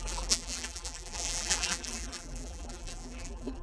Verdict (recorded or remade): remade